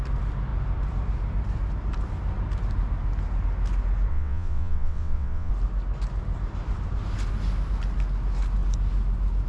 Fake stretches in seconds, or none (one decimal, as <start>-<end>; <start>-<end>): 4.1-5.5